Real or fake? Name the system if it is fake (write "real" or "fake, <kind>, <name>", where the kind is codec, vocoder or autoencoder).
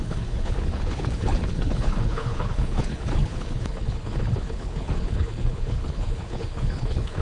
fake, codec, HILCodec